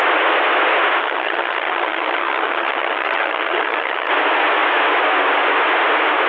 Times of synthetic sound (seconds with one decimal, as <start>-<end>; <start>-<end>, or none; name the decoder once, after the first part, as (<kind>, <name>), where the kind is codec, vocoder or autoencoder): 1.0-4.1 (vocoder, HiFi-GAN)